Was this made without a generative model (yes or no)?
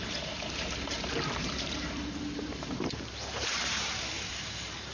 no